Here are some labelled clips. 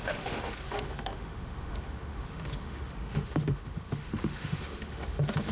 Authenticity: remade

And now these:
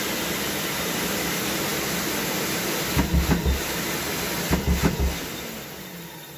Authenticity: recorded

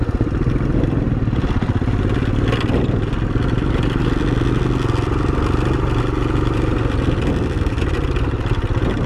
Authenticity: recorded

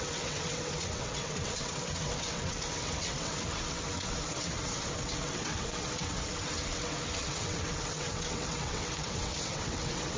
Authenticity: remade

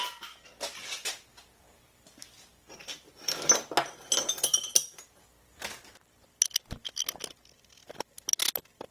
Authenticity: recorded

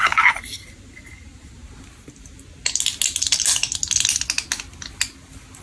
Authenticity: recorded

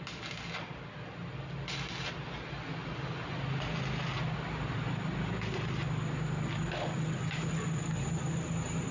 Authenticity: recorded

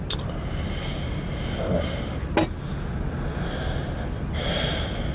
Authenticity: recorded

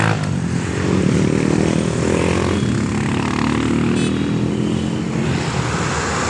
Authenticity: recorded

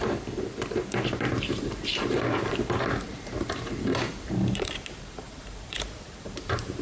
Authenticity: remade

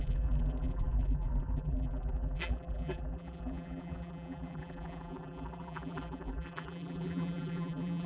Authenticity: remade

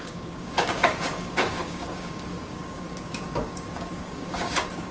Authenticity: remade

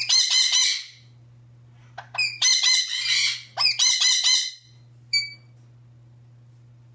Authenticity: recorded